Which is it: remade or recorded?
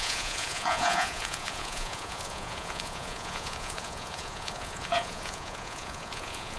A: remade